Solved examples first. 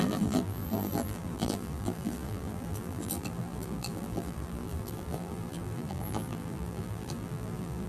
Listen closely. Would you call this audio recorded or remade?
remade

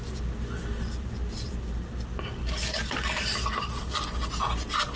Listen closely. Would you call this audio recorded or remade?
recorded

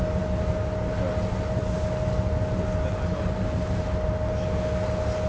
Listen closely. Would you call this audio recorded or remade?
recorded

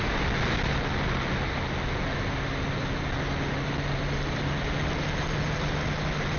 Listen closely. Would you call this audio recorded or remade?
recorded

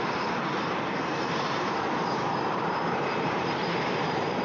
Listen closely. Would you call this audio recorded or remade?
remade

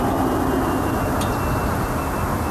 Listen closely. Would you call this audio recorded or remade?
recorded